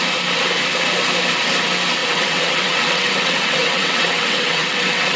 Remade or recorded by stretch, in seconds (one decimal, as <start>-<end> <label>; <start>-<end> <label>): 0.0-2.0 recorded; 2.0-5.2 remade